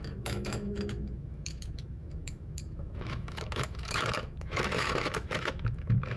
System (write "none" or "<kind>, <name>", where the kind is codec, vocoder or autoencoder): autoencoder, DAC-VAE